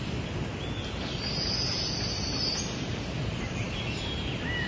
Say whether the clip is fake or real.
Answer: real